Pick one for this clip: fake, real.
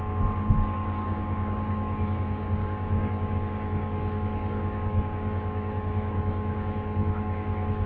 fake